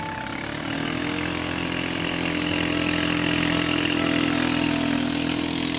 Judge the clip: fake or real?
real